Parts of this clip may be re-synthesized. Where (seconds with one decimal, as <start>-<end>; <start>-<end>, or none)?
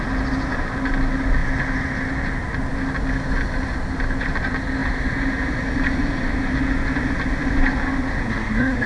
8.2-8.9